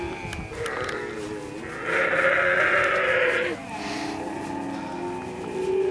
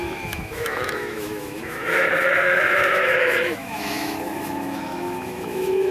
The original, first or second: first